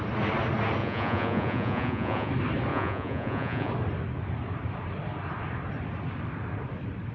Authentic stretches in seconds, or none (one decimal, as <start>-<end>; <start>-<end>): 0.0-0.8; 2.3-2.7; 3.7-7.1